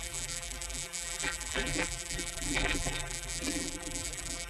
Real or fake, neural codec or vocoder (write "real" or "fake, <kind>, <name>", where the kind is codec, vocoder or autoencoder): fake, vocoder, BigVGAN v2